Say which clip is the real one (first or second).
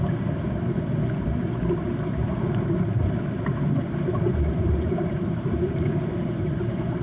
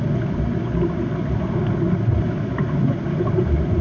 second